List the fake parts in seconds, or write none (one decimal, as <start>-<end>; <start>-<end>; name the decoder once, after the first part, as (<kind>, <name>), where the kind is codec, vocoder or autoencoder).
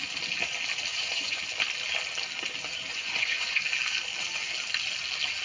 0.9-1.4 (vocoder, Vocos); 2.9-3.6